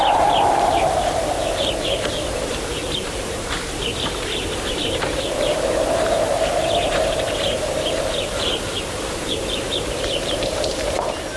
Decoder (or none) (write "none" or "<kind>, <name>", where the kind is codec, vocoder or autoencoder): vocoder, BigVGAN v2